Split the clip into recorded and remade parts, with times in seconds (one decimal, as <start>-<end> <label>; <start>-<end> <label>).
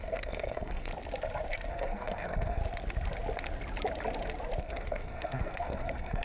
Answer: 0.0-0.9 remade; 0.9-1.7 recorded; 1.7-2.6 remade; 2.6-4.6 recorded; 4.6-6.2 remade